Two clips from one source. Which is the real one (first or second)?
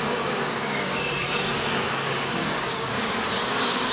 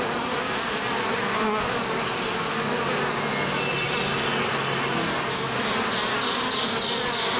second